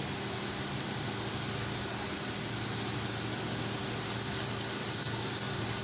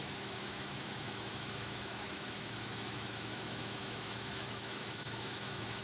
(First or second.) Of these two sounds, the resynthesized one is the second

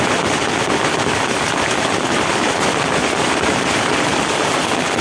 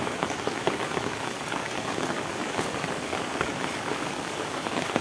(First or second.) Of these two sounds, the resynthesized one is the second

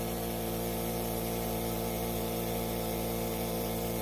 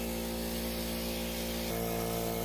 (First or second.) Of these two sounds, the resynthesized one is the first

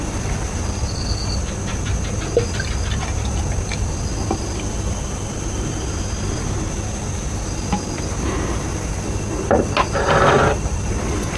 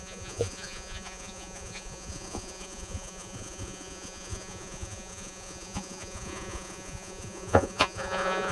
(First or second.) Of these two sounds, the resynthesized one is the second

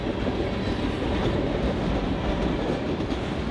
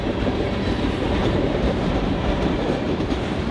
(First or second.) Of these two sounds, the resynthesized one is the second